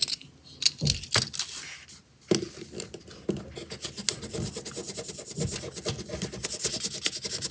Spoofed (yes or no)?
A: no